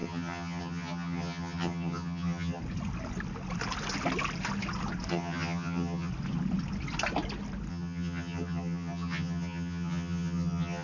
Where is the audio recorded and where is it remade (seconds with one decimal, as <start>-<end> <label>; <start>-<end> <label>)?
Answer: 0.0-2.6 remade; 2.6-5.1 recorded; 5.1-6.1 remade; 6.1-7.7 recorded; 7.7-10.8 remade